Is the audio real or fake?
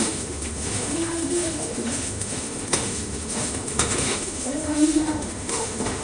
fake